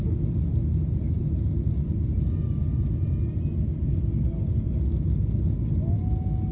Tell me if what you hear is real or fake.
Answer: real